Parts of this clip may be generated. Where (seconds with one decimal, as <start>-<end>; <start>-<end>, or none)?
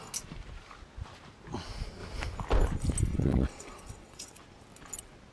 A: 3.1-4.3